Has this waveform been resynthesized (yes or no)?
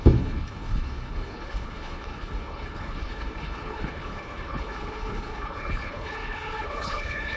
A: yes